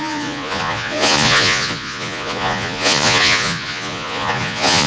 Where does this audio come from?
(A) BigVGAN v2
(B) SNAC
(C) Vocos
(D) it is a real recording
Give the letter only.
C